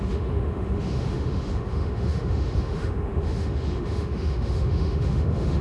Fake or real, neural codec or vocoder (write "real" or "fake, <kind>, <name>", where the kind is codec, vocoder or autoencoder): fake, autoencoder, DAC-VAE